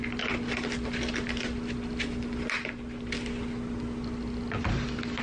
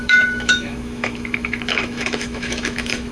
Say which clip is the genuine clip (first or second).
first